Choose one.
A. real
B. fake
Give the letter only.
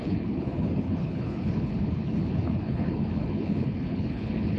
B